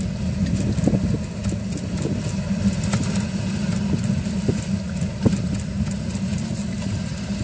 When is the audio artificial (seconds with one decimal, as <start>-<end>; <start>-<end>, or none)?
none